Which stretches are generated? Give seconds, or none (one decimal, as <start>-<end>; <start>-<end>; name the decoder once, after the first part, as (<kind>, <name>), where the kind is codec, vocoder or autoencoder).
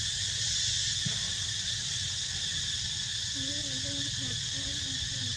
none